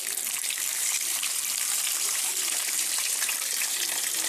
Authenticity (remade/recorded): remade